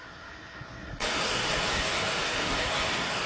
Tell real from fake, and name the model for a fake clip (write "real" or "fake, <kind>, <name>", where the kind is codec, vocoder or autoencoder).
fake, codec, SNAC